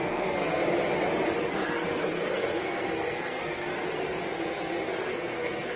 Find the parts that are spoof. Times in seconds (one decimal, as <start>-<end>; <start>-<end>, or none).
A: 0.0-0.6; 1.5-3.7; 5.1-5.8